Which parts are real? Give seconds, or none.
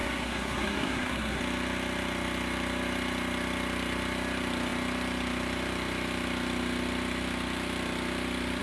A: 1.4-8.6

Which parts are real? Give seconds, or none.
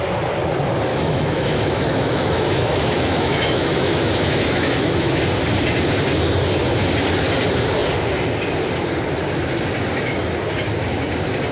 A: 0.0-0.9; 5.2-11.5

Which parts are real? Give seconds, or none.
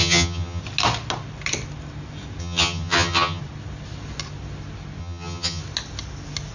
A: 0.6-2.4; 3.4-5.0; 5.6-6.5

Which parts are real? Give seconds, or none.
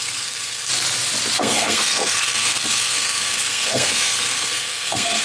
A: 0.7-1.4